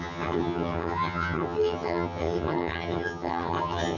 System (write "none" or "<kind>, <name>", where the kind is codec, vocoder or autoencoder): vocoder, HiFi-GAN